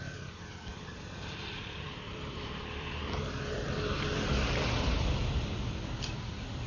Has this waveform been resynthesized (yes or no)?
yes